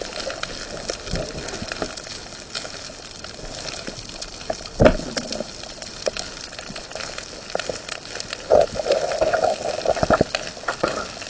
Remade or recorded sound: recorded